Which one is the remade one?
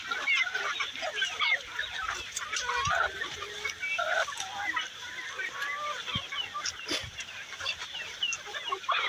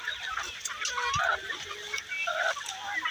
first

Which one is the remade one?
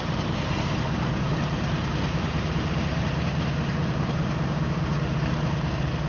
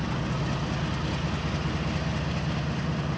first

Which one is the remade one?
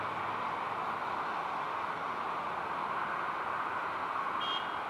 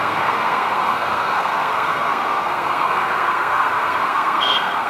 second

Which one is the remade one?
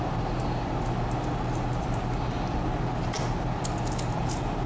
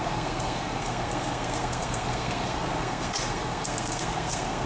second